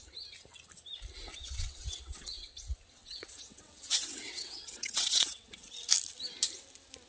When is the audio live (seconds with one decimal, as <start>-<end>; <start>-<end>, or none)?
0.0-1.4; 2.6-3.0; 5.7-7.1